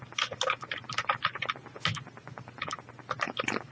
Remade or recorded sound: recorded